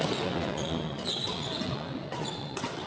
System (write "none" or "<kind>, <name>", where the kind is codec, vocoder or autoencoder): vocoder, WaveNeXt